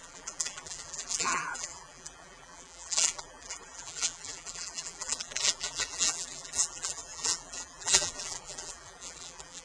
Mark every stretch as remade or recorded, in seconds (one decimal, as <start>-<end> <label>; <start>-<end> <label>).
0.0-9.6 remade